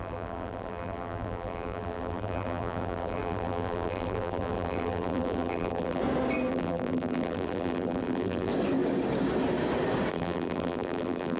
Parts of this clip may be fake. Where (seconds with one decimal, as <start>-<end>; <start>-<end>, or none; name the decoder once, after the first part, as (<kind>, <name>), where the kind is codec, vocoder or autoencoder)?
0.0-6.0 (vocoder, BigVGAN v2); 6.5-8.5; 10.1-11.4